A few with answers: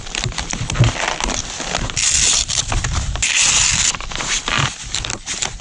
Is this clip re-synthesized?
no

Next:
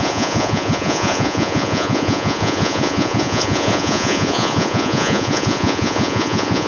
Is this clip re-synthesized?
yes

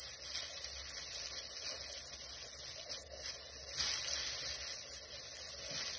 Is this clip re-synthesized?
no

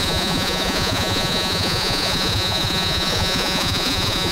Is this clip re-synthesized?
yes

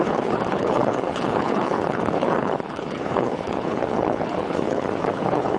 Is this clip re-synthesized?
yes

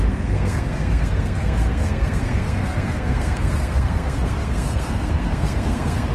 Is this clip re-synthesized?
yes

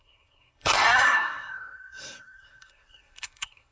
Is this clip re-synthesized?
yes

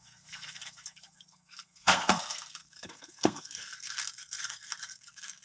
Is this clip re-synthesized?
yes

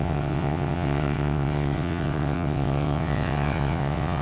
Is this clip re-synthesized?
yes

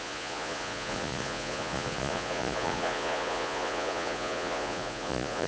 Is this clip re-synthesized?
yes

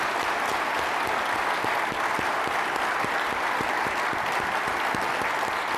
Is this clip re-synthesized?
no